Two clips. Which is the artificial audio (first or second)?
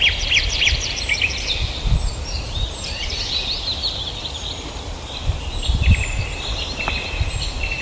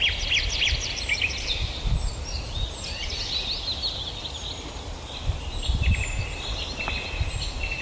first